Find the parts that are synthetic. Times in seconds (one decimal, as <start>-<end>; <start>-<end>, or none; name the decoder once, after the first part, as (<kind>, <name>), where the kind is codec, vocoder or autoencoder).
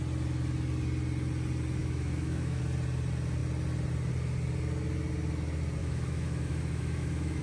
1.8-2.6 (autoencoder, DAC-VAE); 5.8-7.4